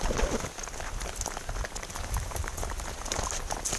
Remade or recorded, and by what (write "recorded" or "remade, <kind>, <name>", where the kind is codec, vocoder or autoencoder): recorded